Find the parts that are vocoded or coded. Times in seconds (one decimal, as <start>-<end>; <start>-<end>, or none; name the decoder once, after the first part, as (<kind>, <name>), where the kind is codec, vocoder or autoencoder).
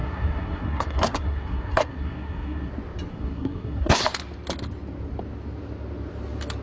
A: 0.0-2.7 (codec, SNAC); 3.1-4.0